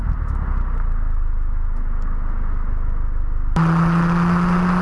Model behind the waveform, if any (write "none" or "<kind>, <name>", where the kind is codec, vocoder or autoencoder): none